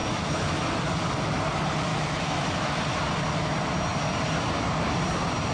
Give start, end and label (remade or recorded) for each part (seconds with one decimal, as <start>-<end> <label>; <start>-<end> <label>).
0.0-0.6 remade; 0.6-1.9 recorded; 1.9-2.8 remade; 2.8-5.5 recorded